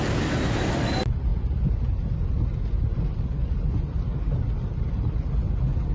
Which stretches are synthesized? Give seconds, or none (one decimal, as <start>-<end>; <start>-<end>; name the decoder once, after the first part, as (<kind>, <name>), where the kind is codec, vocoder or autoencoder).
none